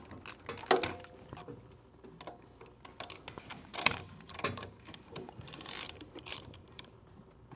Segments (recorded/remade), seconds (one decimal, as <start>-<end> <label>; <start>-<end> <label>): 0.0-3.5 recorded; 3.5-6.9 remade; 6.9-7.6 recorded